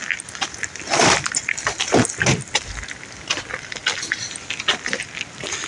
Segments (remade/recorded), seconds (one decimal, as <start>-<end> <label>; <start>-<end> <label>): 0.0-5.7 recorded